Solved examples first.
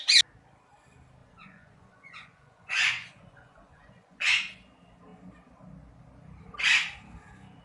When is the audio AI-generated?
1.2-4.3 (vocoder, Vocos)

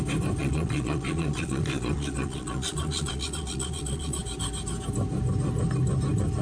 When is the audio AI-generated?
0.4-4.2 (vocoder, Vocos)

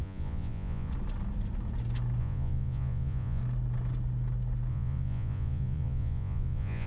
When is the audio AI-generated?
0.0-0.9 (vocoder, Vocos); 2.2-3.4; 4.7-6.9

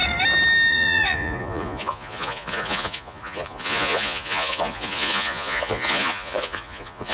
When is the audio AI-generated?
0.7-7.1 (vocoder, Vocos)